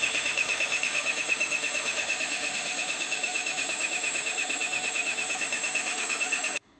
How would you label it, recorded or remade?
remade